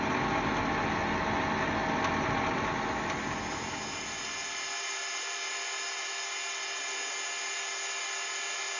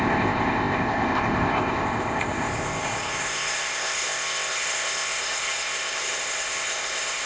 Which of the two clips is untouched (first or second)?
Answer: first